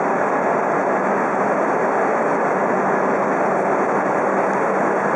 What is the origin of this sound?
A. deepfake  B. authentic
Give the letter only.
B